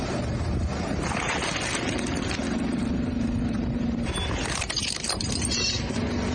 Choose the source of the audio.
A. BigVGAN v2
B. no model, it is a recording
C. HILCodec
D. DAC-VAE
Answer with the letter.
A